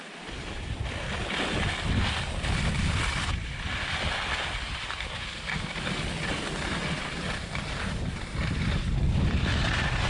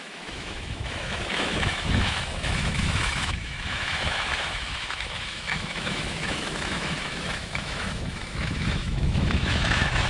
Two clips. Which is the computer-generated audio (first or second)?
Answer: second